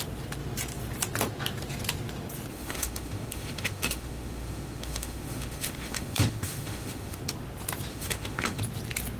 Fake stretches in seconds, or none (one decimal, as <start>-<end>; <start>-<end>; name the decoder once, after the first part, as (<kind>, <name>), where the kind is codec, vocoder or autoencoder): 2.5-7.2 (autoencoder, DAC-VAE); 7.9-8.6